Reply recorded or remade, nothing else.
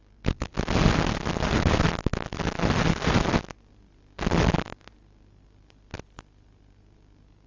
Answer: recorded